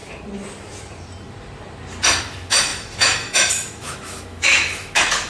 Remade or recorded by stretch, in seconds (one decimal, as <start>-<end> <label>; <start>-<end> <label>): 0.0-2.2 recorded; 2.2-5.3 remade